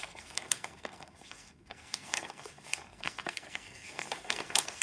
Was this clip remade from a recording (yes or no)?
yes